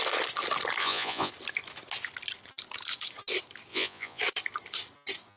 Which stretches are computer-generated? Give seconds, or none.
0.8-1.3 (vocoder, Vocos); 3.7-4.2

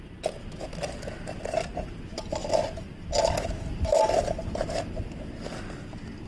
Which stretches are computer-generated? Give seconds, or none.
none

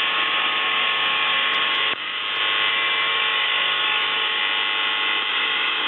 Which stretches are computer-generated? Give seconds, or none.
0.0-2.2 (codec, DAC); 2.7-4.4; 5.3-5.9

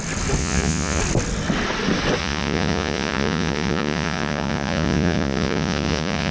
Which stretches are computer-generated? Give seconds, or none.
0.4-1.0 (vocoder, Vocos); 2.2-6.3

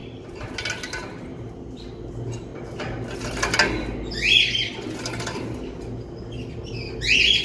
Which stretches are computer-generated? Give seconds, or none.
1.3-2.1 (vocoder, BigVGAN v2)

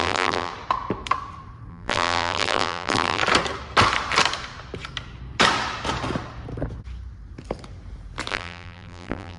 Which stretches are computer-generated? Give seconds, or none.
0.0-0.5 (vocoder, BigVGAN v2); 1.7-3.2; 8.3-9.4